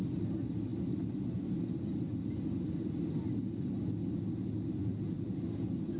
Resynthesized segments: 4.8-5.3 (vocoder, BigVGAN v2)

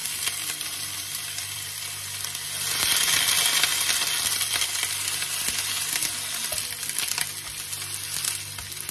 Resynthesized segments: 0.0-1.8 (vocoder, BigVGAN v2)

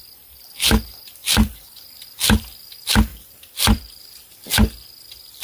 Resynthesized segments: 1.2-1.9 (vocoder, BigVGAN v2); 3.1-4.2

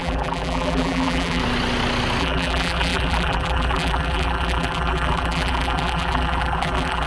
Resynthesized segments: 0.0-1.4 (vocoder, BigVGAN v2); 2.2-7.1

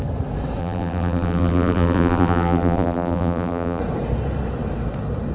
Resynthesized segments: 0.6-3.8 (vocoder, BigVGAN v2)

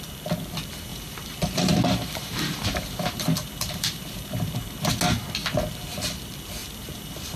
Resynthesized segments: 0.9-4.9 (vocoder, BigVGAN v2); 6.6-7.4

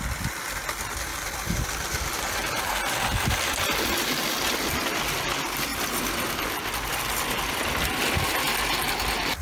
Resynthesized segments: 1.1-2.6 (vocoder, BigVGAN v2); 5.7-6.9

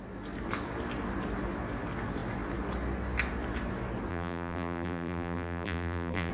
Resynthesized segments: 4.1-6.3 (vocoder, BigVGAN v2)